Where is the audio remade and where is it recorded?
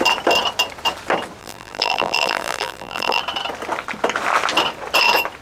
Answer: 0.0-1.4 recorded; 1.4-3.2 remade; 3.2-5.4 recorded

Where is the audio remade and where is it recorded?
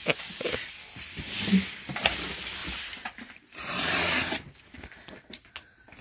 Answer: 0.0-2.6 recorded; 2.6-4.6 remade; 4.6-6.0 recorded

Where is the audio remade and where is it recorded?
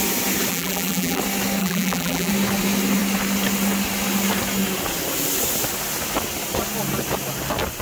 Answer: 0.0-0.5 recorded; 0.5-1.2 remade; 1.2-1.6 recorded; 1.6-2.3 remade; 2.3-7.8 recorded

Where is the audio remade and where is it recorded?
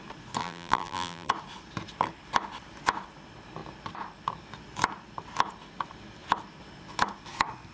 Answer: 0.0-0.4 recorded; 0.4-1.3 remade; 1.3-7.7 recorded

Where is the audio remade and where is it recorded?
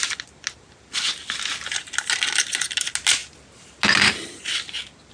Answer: 0.0-5.1 recorded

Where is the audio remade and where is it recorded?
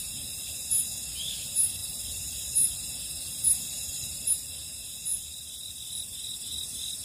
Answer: 0.0-7.0 remade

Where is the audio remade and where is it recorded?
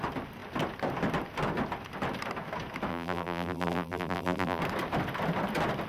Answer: 0.0-2.9 recorded; 2.9-4.6 remade; 4.6-5.9 recorded